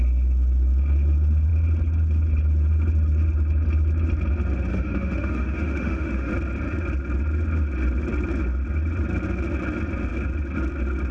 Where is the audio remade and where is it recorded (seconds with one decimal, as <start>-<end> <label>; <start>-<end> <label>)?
0.0-4.7 recorded; 4.7-6.3 remade; 6.3-11.1 recorded